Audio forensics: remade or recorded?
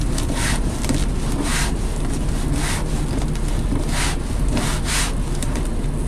remade